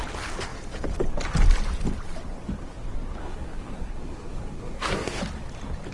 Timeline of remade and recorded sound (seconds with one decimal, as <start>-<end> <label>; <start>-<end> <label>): 0.0-3.2 recorded; 3.2-5.2 remade; 5.2-5.9 recorded